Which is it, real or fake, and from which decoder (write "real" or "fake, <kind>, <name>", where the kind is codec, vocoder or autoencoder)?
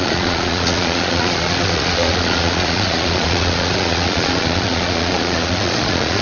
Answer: fake, vocoder, Vocos